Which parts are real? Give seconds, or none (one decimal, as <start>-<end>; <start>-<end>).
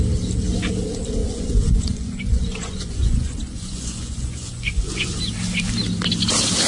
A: 0.0-1.2; 5.2-6.7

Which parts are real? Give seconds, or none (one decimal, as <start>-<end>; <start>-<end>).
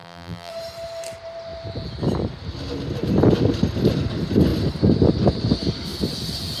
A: 0.5-6.6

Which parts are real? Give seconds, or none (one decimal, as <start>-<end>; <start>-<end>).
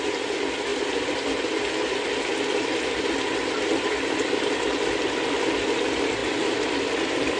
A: 0.7-4.4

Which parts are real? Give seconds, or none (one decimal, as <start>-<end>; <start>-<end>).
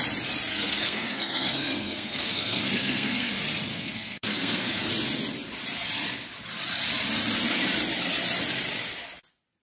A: 0.0-0.5; 3.3-3.7; 4.9-9.6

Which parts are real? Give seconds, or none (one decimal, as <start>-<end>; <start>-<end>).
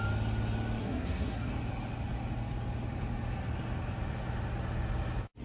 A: 0.0-0.8; 1.5-5.4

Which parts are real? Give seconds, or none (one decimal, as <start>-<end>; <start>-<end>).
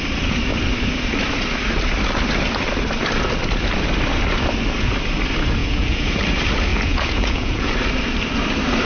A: 0.0-5.6; 6.1-6.7; 7.7-8.8